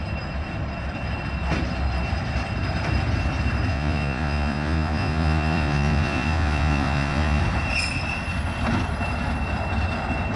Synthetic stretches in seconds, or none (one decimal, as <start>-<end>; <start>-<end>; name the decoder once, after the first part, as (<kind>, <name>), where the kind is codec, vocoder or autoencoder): 3.7-7.4 (vocoder, Vocos)